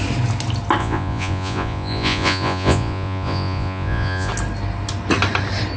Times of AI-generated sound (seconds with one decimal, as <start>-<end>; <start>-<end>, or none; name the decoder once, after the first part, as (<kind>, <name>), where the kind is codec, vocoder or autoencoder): 0.8-4.3 (vocoder, Vocos)